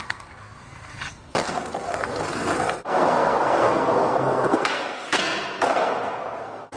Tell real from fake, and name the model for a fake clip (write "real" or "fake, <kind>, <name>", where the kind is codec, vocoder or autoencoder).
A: fake, codec, SNAC